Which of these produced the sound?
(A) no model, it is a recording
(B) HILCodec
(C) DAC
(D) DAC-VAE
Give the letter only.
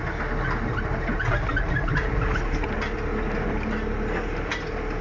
A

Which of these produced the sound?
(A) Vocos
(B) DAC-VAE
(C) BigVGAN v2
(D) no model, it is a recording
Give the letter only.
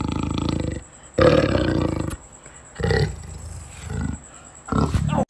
D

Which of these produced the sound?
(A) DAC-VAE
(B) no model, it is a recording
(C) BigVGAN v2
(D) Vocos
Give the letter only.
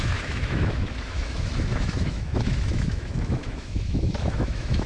A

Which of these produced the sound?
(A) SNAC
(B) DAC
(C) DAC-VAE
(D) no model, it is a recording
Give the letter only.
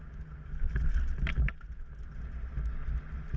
D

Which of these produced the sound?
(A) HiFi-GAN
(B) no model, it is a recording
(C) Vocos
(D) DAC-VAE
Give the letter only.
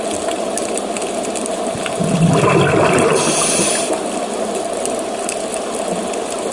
B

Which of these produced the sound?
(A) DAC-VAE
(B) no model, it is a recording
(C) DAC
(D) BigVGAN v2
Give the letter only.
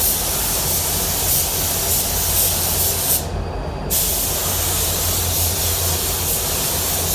B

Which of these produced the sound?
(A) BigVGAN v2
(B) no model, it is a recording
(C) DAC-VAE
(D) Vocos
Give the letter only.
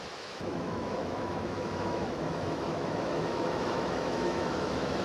C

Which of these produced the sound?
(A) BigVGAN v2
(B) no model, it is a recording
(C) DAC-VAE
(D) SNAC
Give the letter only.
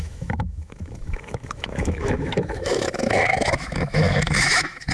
C